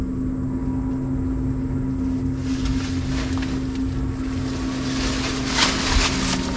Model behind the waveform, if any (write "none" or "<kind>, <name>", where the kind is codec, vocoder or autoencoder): none